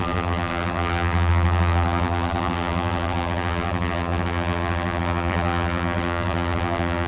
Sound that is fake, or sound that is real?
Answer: fake